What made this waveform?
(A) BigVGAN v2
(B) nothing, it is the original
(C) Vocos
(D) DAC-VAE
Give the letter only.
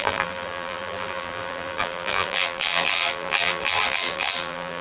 A